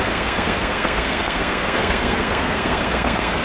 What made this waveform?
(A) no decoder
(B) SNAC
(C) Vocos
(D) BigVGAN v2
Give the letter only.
B